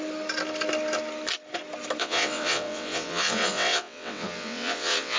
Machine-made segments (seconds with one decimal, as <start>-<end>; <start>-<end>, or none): 2.0-5.2